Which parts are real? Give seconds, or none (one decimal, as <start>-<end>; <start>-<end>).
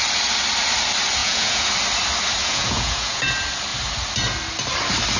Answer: 0.0-1.2; 1.7-2.4; 3.2-5.2